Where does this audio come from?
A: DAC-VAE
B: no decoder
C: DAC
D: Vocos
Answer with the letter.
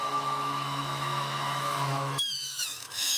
A